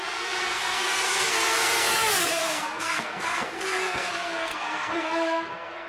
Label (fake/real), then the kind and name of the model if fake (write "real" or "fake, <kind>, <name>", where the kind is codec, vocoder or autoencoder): fake, codec, SNAC